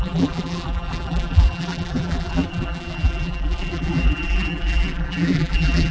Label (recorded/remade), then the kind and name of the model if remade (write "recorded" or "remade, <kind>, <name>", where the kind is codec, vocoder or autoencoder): remade, vocoder, BigVGAN v2